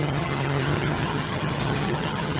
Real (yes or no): no